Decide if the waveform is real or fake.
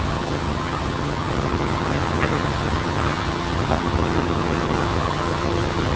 fake